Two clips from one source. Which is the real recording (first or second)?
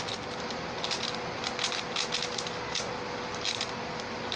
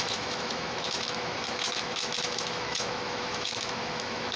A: first